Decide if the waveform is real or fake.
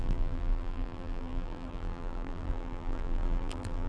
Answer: fake